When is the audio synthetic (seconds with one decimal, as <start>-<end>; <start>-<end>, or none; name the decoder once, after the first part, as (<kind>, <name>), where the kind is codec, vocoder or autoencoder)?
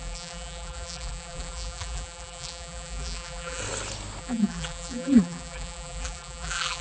0.0-3.6 (vocoder, BigVGAN v2); 4.2-6.8